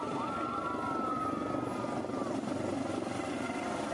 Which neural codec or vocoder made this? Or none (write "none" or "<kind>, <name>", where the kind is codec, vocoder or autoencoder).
none